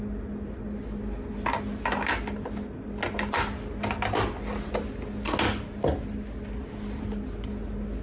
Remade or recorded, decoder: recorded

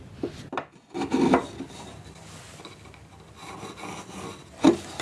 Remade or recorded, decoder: recorded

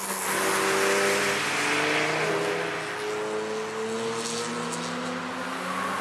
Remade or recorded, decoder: recorded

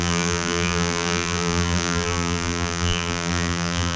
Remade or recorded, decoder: remade, vocoder, BigVGAN v2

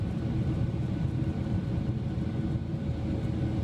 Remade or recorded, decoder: recorded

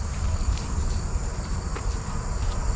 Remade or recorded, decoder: remade, vocoder, BigVGAN v2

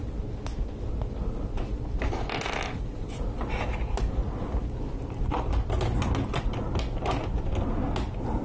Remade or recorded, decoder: recorded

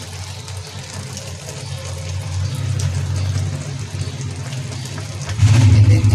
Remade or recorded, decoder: recorded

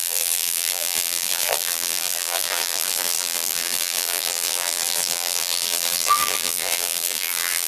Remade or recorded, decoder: remade, vocoder, BigVGAN v2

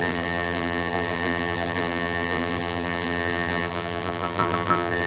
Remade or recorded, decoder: remade, vocoder, BigVGAN v2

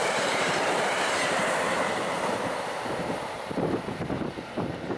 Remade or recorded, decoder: remade, vocoder, BigVGAN v2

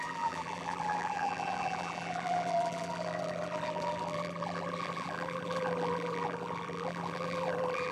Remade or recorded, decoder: remade, vocoder, BigVGAN v2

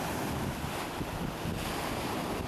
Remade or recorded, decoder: recorded